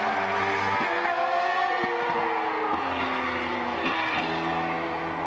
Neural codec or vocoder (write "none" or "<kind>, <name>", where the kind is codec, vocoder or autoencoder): none